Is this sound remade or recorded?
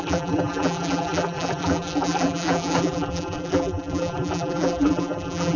remade